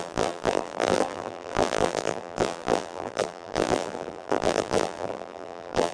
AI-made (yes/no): yes